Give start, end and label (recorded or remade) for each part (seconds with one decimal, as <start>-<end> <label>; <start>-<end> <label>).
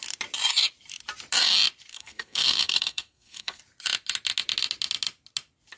0.0-1.9 recorded; 1.9-3.6 remade; 3.6-5.8 recorded